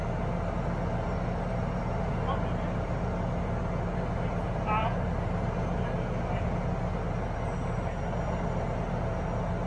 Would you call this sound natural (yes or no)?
yes